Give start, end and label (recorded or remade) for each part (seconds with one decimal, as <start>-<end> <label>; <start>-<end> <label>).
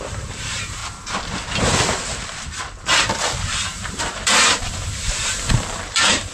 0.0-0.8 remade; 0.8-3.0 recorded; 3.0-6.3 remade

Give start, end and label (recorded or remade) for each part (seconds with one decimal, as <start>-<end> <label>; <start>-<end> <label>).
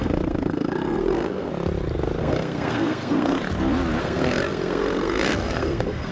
0.0-1.5 remade; 1.5-2.2 recorded; 2.2-3.4 remade; 3.4-4.0 recorded; 4.0-6.1 remade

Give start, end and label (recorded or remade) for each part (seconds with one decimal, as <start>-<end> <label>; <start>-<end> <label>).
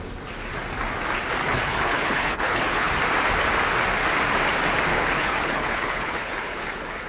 0.0-1.4 recorded; 1.4-2.9 remade; 2.9-4.9 recorded; 4.9-7.1 remade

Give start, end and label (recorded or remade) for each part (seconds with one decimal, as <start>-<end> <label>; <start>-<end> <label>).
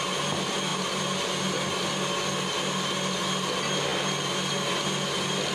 0.0-5.5 recorded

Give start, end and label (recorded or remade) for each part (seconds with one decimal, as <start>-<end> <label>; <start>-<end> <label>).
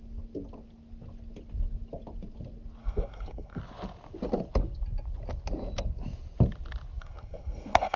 0.0-2.8 recorded; 2.8-3.6 remade; 3.6-7.0 recorded; 7.0-8.0 remade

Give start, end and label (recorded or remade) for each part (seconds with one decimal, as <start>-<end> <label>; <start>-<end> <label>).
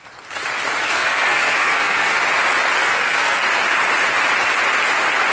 0.0-0.8 recorded; 0.8-2.1 remade; 2.1-2.8 recorded; 2.8-3.4 remade; 3.4-5.3 recorded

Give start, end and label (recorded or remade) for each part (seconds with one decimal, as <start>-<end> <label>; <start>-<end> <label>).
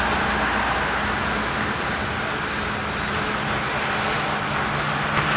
0.0-5.4 recorded